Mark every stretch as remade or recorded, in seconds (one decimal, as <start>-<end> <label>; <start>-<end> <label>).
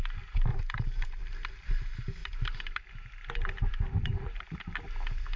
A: 0.0-0.5 recorded; 0.5-1.2 remade; 1.2-2.2 recorded; 2.2-2.9 remade; 2.9-4.0 recorded; 4.0-4.6 remade; 4.6-5.4 recorded